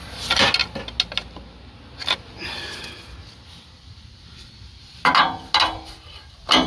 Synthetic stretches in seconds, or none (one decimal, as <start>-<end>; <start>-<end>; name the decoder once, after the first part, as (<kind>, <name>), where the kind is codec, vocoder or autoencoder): none